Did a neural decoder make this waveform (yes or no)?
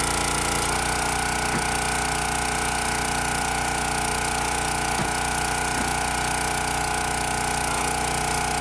no